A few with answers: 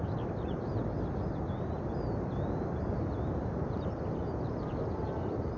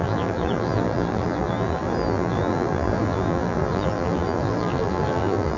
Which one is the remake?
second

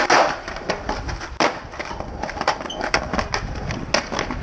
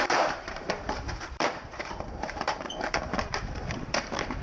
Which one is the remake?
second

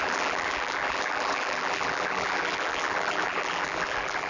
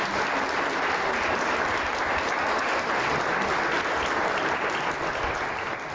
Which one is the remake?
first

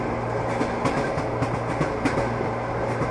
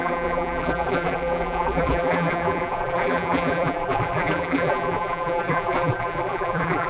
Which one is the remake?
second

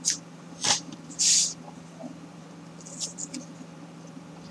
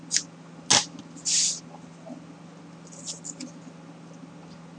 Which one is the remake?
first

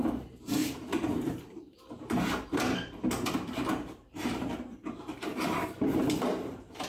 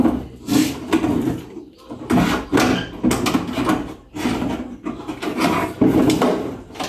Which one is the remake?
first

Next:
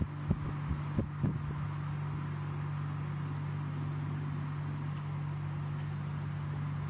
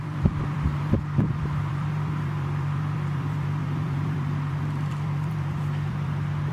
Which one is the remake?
second